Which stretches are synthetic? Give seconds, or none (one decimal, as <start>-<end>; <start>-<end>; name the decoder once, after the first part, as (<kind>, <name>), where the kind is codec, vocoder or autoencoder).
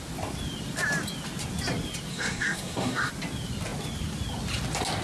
2.1-3.1 (codec, SNAC)